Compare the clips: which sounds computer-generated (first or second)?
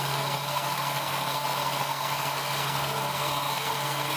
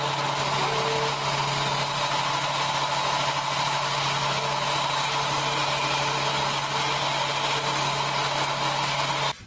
first